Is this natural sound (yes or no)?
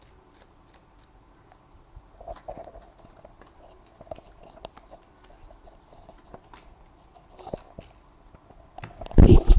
yes